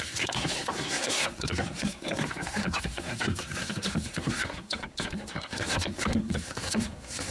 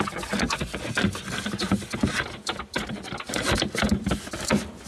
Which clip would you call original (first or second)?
second